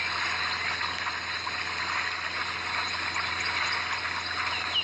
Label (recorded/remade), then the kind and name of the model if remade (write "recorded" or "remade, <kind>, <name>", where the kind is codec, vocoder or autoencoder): recorded